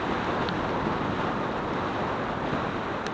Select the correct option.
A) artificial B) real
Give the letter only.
B